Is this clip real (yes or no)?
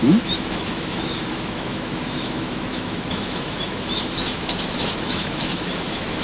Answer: no